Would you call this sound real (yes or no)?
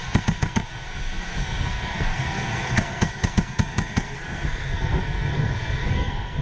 no